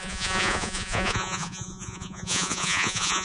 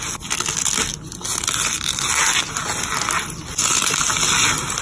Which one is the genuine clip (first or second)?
second